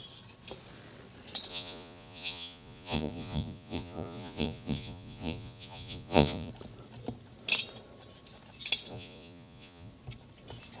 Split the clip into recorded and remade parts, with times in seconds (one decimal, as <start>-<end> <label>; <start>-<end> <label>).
0.0-1.5 recorded; 1.5-6.5 remade; 6.5-8.9 recorded; 8.9-9.9 remade; 9.9-10.8 recorded